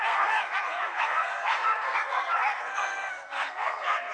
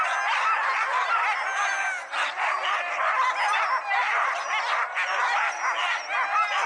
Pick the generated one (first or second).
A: first